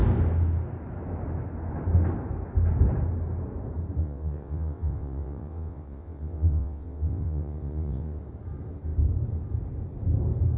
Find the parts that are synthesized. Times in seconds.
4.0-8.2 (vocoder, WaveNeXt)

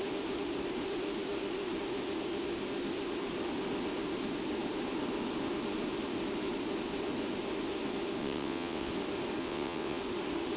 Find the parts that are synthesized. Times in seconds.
8.2-8.9 (vocoder, WaveNeXt); 9.4-10.0

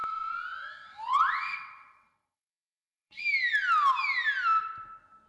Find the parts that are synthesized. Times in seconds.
0.0-3.2 (vocoder, WaveNeXt)

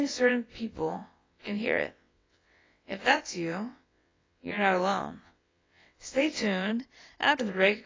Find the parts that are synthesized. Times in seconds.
0.0-6.7 (vocoder, WaveNeXt); 7.4-7.9

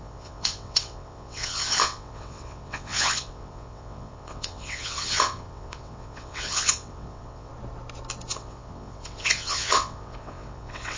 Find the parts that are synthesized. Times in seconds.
0.0-7.5 (vocoder, WaveNeXt); 8.3-11.0